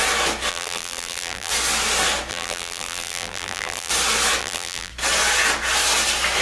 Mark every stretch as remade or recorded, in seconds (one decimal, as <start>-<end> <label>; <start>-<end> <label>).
0.0-0.5 recorded; 0.5-1.5 remade; 1.5-2.3 recorded; 2.3-3.9 remade; 3.9-4.4 recorded; 4.4-4.9 remade; 4.9-6.4 recorded